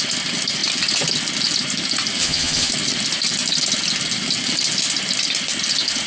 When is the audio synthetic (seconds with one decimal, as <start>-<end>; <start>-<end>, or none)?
2.2-2.7

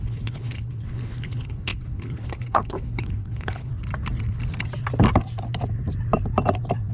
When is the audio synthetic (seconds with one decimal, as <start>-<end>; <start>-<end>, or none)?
0.0-3.7

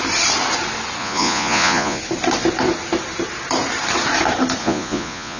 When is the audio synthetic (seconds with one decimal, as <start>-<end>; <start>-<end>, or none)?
1.0-2.0; 4.6-5.4

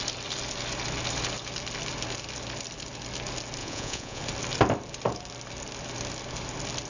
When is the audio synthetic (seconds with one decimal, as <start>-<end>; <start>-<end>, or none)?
3.6-4.2

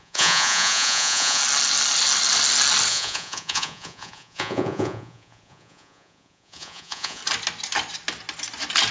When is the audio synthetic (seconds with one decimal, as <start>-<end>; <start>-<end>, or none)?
0.0-1.4; 2.9-7.2

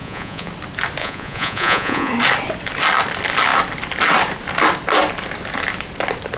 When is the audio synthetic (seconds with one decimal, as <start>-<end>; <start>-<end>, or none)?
0.0-0.5; 1.0-2.1